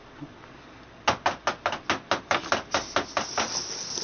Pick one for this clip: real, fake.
real